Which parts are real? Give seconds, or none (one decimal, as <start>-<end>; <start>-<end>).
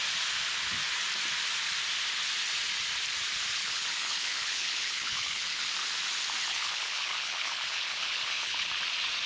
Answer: 0.0-3.6; 5.7-6.4; 8.7-9.3